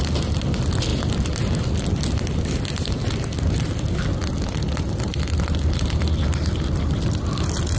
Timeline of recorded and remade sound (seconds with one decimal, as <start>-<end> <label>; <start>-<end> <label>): 0.0-7.8 recorded